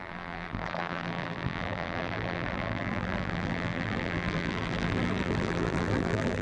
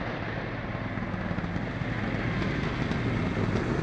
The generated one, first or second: first